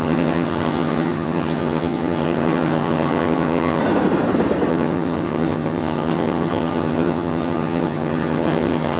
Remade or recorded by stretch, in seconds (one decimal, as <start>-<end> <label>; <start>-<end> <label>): 0.0-3.8 remade; 3.8-4.7 recorded; 4.7-9.0 remade